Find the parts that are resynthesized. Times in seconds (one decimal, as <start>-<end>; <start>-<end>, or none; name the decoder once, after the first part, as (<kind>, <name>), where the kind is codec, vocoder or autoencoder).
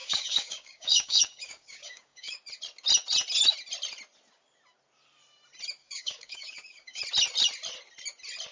0.0-2.4 (codec, DAC); 5.8-7.0